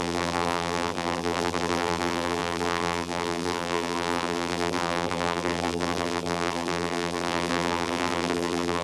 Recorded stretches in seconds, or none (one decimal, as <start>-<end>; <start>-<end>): none